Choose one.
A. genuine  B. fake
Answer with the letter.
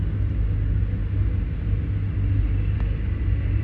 A